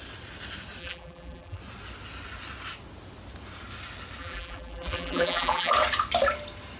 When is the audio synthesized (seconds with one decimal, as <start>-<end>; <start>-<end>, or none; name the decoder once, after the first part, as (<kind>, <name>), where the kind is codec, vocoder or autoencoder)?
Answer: 0.8-1.6 (vocoder, BigVGAN v2); 4.2-5.7